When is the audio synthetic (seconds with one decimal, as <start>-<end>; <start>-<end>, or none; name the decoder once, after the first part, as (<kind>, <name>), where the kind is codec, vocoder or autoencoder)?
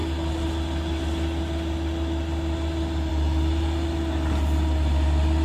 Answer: none